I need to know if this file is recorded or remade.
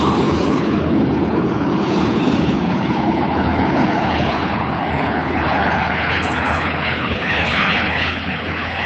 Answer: remade